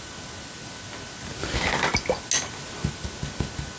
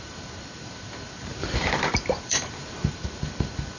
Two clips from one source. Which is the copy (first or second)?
second